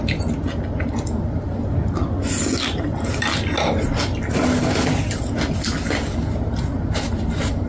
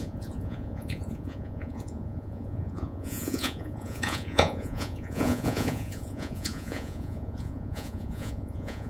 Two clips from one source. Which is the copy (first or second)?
second